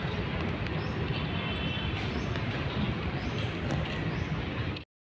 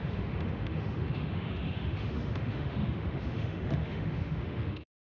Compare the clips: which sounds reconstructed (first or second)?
second